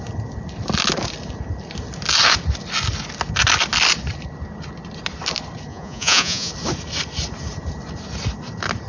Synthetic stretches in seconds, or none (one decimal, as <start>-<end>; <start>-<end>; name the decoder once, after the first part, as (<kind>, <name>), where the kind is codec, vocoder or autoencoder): 5.7-6.5 (vocoder, Vocos)

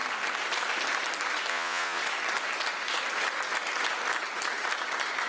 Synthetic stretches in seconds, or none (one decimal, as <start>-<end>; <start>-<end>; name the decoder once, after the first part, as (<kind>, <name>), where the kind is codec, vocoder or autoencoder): 1.5-2.0 (vocoder, Vocos)

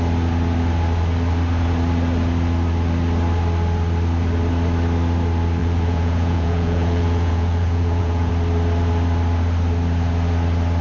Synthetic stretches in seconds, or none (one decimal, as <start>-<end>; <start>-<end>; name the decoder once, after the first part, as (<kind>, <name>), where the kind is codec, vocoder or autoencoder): 5.6-8.3 (vocoder, Vocos)